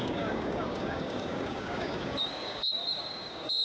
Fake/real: fake